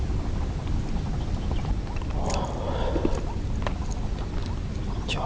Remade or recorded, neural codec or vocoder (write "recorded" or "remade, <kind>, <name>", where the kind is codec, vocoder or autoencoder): recorded